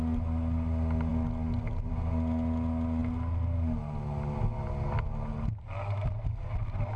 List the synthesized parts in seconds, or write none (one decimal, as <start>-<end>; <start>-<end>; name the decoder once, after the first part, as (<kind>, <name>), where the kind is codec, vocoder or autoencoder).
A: none

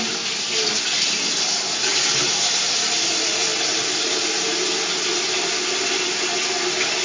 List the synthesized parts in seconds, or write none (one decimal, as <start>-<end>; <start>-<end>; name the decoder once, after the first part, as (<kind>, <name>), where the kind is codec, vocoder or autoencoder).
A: none

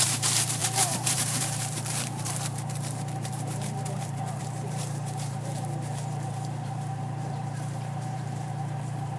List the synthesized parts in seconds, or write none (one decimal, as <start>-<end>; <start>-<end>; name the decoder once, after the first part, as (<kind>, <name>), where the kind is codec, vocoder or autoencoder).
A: 0.0-9.2 (vocoder, BigVGAN v2)

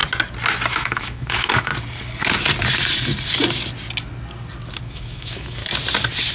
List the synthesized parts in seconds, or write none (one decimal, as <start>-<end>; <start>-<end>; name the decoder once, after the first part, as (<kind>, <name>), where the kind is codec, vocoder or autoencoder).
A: 0.7-1.7 (autoencoder, DAC-VAE); 4.8-5.6